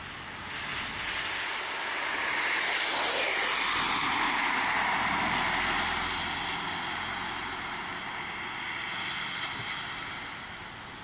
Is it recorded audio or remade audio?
recorded